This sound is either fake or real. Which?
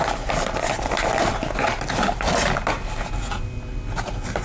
real